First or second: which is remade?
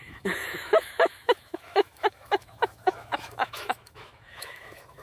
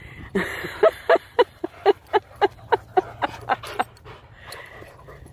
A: first